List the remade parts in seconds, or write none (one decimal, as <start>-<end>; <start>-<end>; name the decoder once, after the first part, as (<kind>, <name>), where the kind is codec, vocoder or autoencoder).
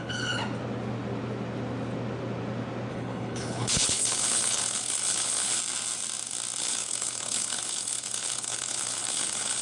0.0-0.4 (codec, HILCodec); 2.9-5.6; 6.6-9.6